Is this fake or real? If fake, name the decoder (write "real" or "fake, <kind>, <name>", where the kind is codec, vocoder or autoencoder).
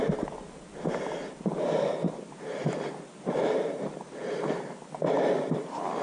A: real